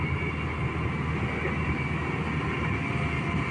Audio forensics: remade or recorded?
recorded